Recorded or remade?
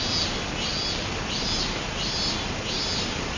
recorded